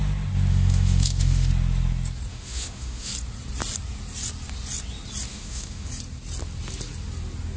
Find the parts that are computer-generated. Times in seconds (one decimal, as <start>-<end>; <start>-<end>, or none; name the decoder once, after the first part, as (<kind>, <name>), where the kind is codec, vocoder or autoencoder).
0.5-1.5 (autoencoder, DAC-VAE); 2.3-3.1; 5.3-5.9